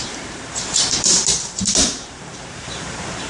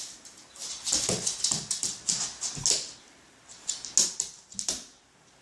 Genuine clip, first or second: second